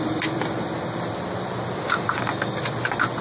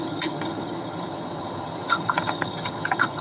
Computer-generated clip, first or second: second